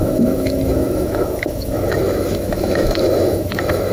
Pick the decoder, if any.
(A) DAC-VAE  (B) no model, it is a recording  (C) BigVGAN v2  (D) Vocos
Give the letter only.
A